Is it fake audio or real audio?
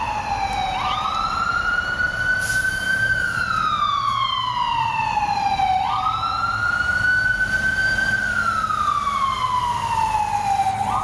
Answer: real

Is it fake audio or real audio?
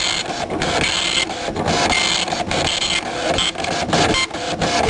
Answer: real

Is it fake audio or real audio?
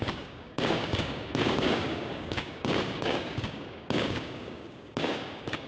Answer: fake